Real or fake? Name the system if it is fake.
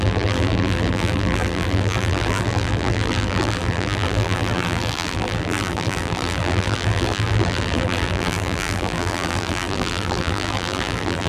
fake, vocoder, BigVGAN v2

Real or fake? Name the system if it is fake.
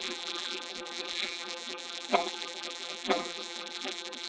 fake, vocoder, BigVGAN v2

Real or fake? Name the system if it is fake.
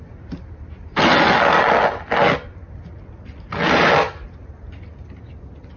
real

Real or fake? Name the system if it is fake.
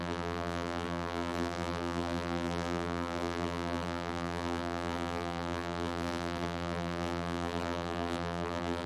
fake, vocoder, BigVGAN v2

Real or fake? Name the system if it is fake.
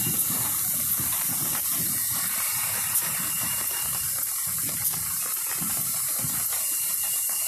fake, vocoder, BigVGAN v2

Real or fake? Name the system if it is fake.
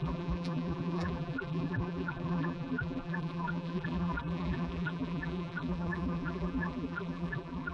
fake, vocoder, BigVGAN v2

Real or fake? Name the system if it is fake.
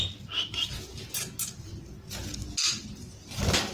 real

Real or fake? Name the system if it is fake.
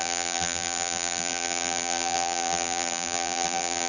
fake, vocoder, BigVGAN v2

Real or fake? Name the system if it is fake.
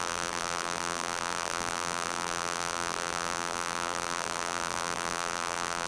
fake, vocoder, BigVGAN v2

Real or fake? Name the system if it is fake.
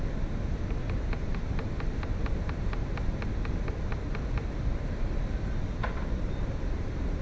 real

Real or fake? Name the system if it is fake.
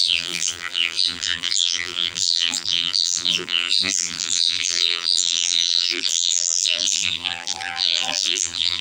fake, vocoder, BigVGAN v2